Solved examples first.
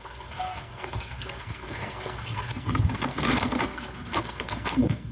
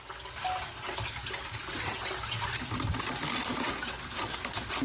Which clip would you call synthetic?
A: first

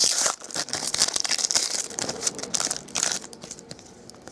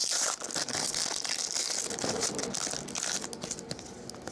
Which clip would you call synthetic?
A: first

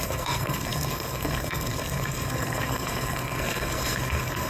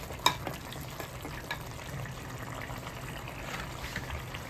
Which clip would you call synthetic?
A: first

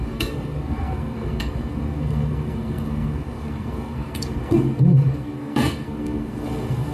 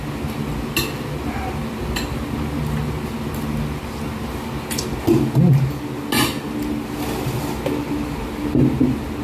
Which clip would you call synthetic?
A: first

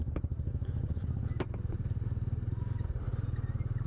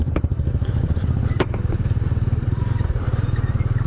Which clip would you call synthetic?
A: second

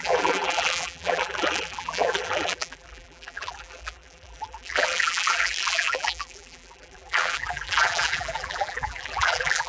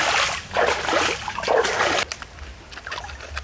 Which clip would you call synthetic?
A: first